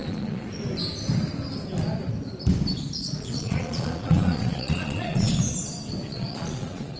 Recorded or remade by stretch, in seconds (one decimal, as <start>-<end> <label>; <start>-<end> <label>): 0.0-0.5 remade; 0.5-3.0 recorded; 3.0-5.4 remade; 5.4-6.0 recorded; 6.0-7.0 remade